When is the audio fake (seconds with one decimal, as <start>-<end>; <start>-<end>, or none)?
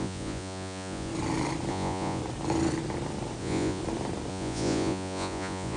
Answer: 0.0-1.1; 1.7-2.2; 3.4-3.8; 4.3-5.8